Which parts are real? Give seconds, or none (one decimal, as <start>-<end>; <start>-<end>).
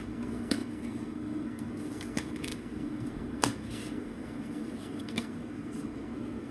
none